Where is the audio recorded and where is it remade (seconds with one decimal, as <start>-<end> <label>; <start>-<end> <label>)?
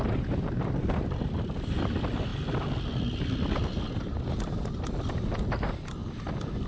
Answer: 0.0-6.7 recorded